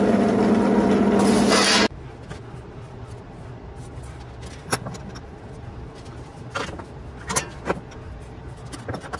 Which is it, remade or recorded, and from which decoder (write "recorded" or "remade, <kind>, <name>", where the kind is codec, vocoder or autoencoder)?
recorded